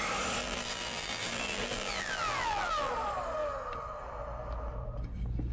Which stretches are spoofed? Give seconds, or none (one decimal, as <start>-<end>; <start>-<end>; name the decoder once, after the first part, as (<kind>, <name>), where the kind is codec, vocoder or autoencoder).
0.4-2.9 (vocoder, BigVGAN v2)